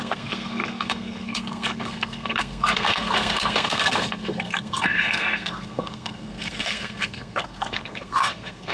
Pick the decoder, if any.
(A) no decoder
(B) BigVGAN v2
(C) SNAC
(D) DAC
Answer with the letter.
C